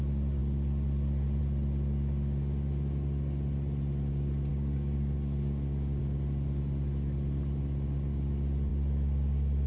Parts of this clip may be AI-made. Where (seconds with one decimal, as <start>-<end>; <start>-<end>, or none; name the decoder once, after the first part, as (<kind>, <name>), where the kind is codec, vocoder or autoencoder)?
4.5-6.0 (codec, DAC)